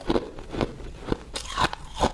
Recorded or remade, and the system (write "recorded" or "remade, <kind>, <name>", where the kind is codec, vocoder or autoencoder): recorded